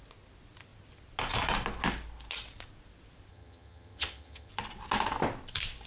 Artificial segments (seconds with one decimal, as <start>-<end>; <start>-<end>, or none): 3.3-4.5